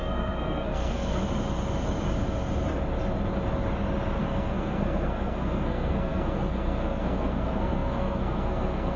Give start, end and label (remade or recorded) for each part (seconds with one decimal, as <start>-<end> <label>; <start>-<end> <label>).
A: 0.0-1.2 remade; 1.2-4.2 recorded; 4.2-9.0 remade